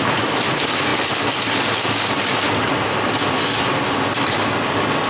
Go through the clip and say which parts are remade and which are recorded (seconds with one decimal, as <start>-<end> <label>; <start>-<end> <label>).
0.0-5.1 recorded

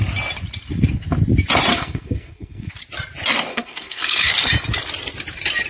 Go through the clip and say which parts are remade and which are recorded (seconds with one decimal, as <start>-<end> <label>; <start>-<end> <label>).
0.0-1.7 recorded; 1.7-2.7 remade; 2.7-3.5 recorded; 3.5-4.3 remade; 4.3-5.7 recorded

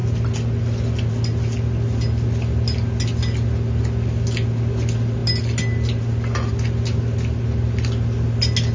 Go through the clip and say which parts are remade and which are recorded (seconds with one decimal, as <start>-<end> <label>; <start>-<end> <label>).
0.0-8.7 recorded

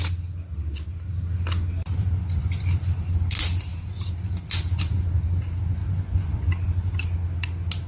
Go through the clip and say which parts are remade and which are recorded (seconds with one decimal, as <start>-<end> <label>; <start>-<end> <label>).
0.0-5.8 recorded; 5.8-6.5 remade; 6.5-7.9 recorded

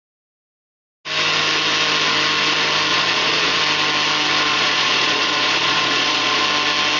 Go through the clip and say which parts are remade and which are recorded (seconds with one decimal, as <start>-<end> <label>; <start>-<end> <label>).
0.0-2.9 recorded; 2.9-3.6 remade; 3.6-4.5 recorded; 4.5-6.4 remade; 6.4-7.0 recorded